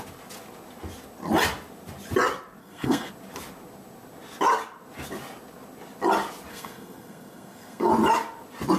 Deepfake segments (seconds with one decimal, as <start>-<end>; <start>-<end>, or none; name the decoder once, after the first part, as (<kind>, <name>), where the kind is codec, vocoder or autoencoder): 2.6-3.1 (codec, SNAC); 6.5-7.9